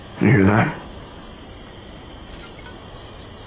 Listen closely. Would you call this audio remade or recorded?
recorded